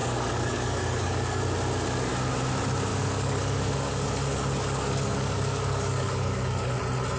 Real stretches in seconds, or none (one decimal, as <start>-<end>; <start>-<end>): 1.4-2.9; 6.8-7.2